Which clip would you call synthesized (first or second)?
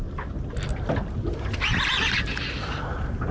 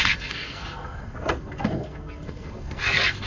second